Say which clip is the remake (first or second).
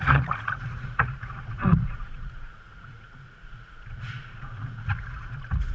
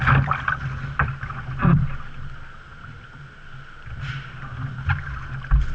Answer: first